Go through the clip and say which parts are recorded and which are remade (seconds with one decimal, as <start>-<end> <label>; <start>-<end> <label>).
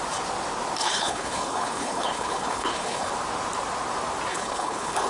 0.0-0.8 recorded; 0.8-3.1 remade; 3.1-4.3 recorded; 4.3-5.1 remade